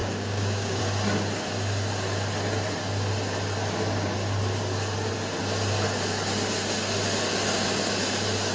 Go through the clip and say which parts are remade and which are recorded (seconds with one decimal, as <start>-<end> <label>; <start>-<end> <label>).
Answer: 0.0-0.8 remade; 0.8-8.5 recorded